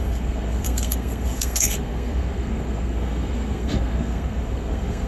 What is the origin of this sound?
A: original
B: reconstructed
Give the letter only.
B